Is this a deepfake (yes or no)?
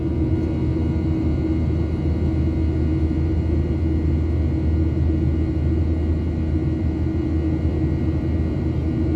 no